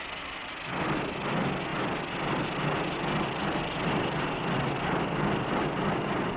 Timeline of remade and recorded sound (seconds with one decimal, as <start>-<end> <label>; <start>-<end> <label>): 0.0-6.4 recorded